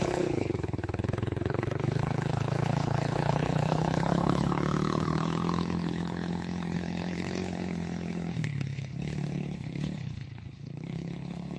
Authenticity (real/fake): fake